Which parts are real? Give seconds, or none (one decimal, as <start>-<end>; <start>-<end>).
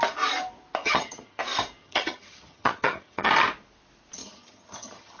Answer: 0.0-0.8; 1.4-1.8; 3.3-4.2